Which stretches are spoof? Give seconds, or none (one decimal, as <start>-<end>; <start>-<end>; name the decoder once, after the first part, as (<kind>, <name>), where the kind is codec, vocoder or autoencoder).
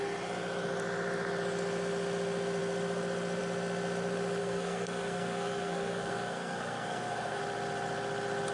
4.4-7.4 (codec, SNAC)